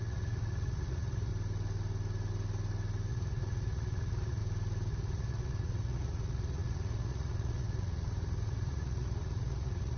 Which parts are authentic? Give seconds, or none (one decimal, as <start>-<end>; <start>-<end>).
1.3-3.1; 4.4-4.9